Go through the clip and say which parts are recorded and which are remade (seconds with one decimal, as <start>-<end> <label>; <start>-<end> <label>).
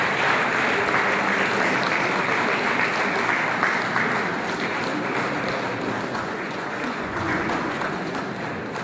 0.0-6.1 recorded; 6.1-8.2 remade; 8.2-8.8 recorded